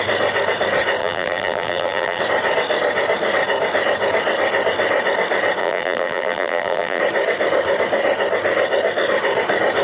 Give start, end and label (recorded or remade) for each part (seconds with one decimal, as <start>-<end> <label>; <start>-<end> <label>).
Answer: 0.0-1.0 recorded; 1.0-2.2 remade; 2.2-5.6 recorded; 5.6-7.0 remade; 7.0-9.8 recorded

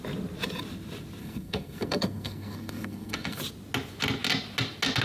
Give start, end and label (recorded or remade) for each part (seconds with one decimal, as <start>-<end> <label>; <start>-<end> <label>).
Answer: 0.0-1.2 recorded; 1.2-3.4 remade; 3.4-5.0 recorded